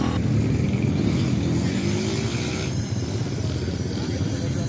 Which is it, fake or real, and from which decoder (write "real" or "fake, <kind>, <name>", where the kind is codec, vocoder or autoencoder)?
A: real